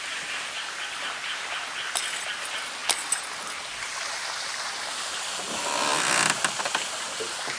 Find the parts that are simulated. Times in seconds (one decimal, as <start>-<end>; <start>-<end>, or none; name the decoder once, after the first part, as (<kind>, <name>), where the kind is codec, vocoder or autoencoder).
none